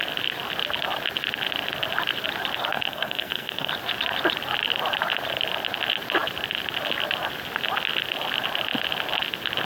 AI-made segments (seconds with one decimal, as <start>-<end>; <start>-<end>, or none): 2.7-3.7